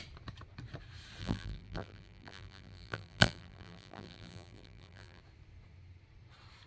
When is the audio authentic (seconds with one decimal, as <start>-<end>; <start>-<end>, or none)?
0.0-1.2; 5.2-6.7